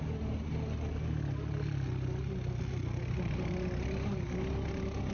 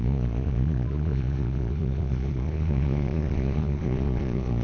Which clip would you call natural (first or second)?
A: first